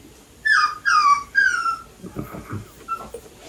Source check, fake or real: real